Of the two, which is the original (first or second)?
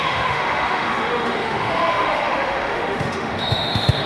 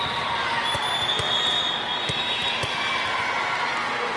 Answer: second